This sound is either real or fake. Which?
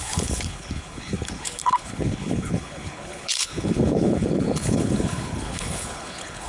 fake